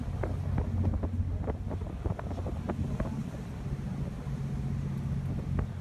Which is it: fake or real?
real